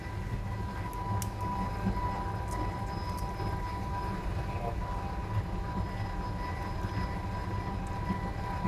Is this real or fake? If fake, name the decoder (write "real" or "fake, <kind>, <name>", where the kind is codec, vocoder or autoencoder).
real